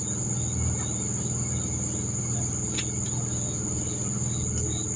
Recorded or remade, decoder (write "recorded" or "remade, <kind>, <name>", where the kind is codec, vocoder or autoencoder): recorded